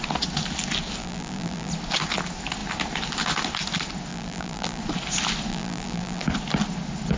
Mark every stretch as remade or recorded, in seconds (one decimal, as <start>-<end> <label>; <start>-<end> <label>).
0.0-1.0 recorded; 1.0-1.7 remade; 1.7-4.1 recorded; 4.1-4.8 remade; 4.8-5.5 recorded; 5.5-6.2 remade; 6.2-7.2 recorded